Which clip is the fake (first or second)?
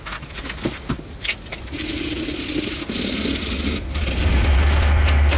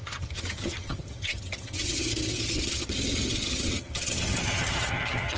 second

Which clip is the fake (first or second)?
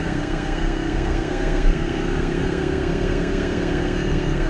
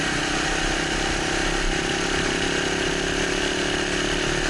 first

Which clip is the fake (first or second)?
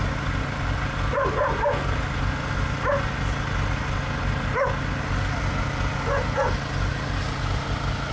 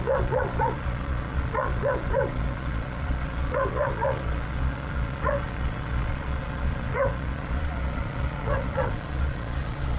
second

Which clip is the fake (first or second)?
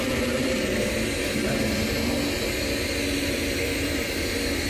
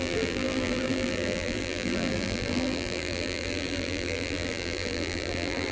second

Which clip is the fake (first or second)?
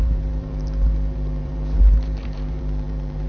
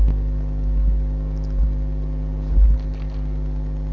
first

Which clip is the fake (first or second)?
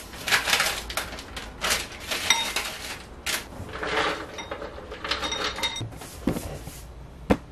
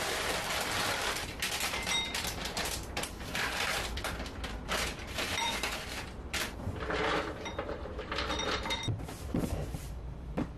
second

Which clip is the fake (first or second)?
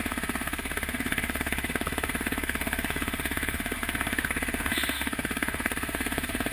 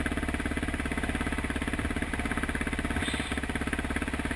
first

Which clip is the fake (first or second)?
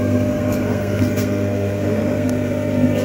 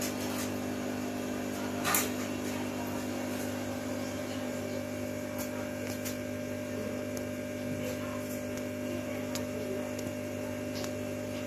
first